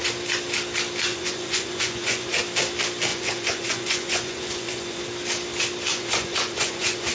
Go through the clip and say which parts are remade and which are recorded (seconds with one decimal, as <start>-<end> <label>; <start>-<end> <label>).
0.0-1.1 recorded; 1.1-2.4 remade; 2.4-3.1 recorded; 3.1-5.0 remade; 5.0-5.9 recorded; 5.9-7.1 remade